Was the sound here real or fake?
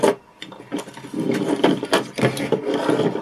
real